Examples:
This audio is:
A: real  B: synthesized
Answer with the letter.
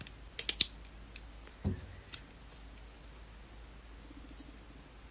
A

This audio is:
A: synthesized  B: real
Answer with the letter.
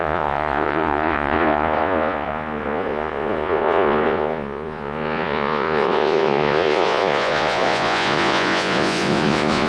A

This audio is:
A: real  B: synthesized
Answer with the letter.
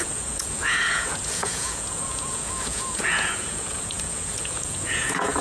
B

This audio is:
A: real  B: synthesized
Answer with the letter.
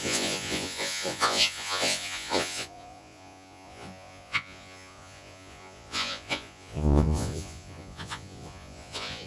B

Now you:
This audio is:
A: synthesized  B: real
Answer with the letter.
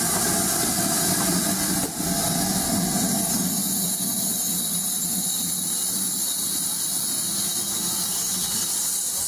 B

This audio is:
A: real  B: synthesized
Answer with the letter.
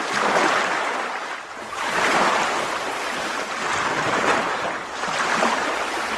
A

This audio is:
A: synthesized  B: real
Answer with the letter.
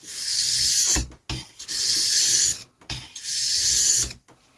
B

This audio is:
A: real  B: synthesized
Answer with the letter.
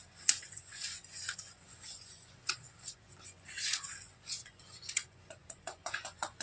B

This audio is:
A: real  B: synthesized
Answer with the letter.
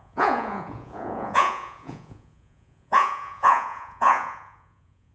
B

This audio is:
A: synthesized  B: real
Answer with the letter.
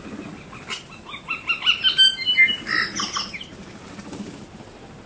B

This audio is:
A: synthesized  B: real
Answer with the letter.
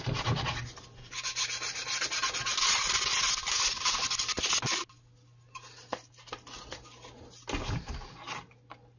B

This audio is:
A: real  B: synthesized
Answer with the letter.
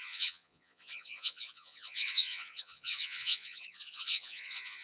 B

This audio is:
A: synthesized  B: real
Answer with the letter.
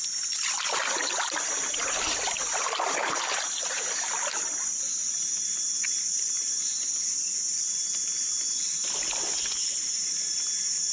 B